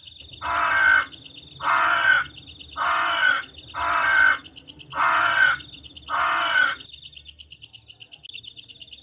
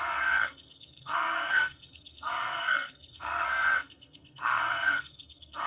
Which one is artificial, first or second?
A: second